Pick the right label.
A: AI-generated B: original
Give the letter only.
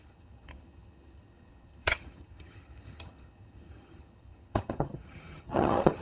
A